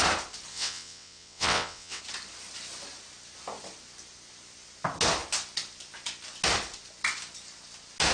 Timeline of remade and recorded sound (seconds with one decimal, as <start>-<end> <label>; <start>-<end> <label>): 0.0-0.5 recorded; 0.5-2.0 remade; 2.0-8.1 recorded